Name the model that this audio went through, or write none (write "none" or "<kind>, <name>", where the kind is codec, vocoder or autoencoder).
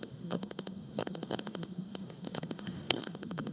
codec, SNAC